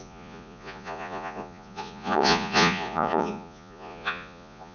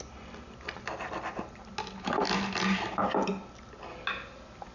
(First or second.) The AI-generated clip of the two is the first